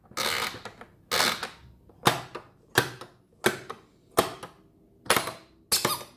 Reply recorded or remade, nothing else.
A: recorded